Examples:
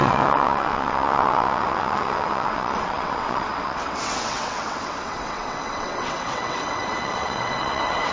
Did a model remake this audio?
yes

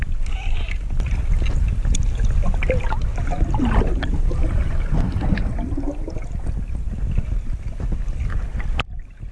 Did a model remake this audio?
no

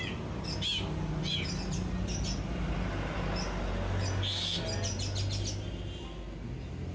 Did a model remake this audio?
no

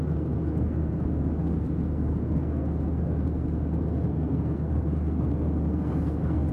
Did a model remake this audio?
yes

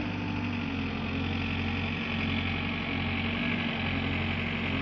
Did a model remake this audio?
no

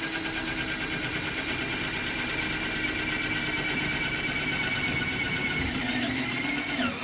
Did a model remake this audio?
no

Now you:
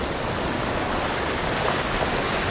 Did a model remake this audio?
no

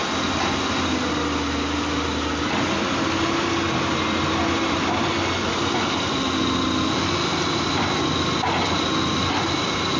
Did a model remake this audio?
no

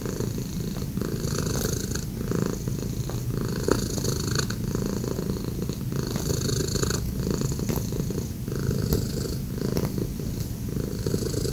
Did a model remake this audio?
no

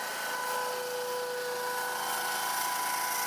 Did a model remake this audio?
no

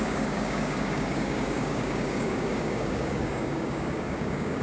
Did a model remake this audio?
yes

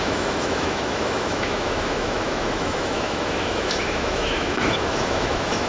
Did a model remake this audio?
yes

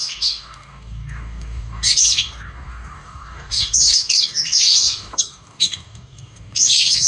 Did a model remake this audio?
yes